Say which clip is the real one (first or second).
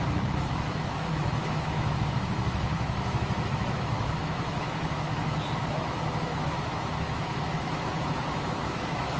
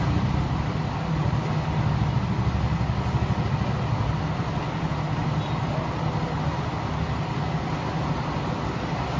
second